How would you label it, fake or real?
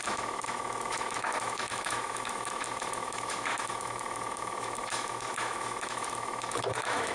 fake